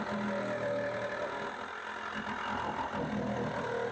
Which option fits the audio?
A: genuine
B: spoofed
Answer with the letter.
A